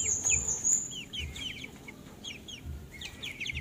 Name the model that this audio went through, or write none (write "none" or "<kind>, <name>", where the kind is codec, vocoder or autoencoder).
vocoder, BigVGAN v2